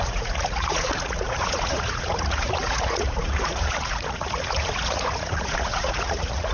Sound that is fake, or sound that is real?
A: fake